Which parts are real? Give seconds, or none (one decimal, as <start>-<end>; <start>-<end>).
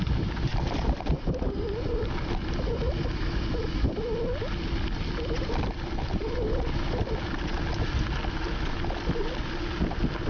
0.0-10.3